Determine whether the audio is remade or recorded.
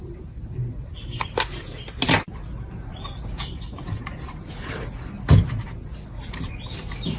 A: recorded